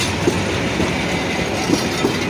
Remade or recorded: recorded